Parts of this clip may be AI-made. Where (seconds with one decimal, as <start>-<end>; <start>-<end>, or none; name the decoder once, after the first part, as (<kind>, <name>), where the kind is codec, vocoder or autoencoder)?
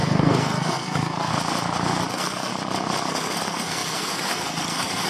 0.0-1.3 (codec, SNAC); 2.1-2.5; 3.1-5.1